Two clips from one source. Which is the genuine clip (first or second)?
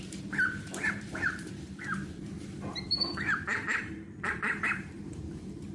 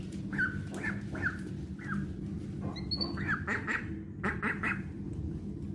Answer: second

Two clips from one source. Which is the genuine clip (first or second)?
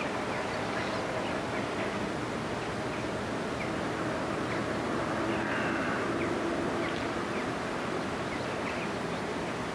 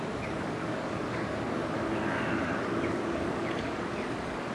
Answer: first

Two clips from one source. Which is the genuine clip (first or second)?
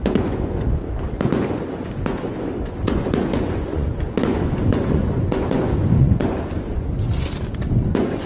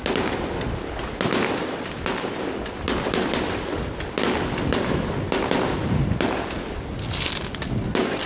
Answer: second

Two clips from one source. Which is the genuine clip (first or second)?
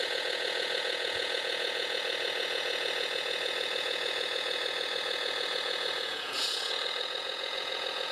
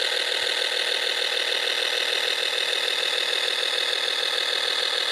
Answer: second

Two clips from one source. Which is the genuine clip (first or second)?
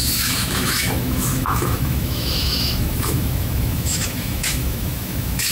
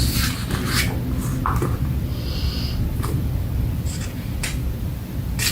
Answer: second